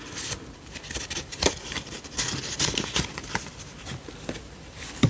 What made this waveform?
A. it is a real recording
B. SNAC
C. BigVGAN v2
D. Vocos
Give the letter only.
C